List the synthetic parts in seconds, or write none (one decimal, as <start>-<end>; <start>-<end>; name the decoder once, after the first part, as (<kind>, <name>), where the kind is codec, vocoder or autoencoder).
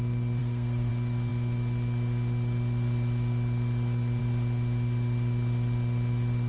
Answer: 0.4-0.9 (codec, SNAC)